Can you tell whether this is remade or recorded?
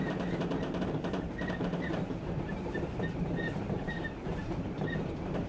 remade